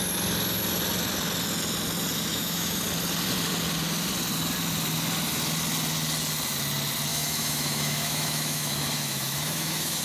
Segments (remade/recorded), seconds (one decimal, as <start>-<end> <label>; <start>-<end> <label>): 0.0-2.3 recorded; 2.3-2.8 remade; 2.8-7.1 recorded; 7.1-10.0 remade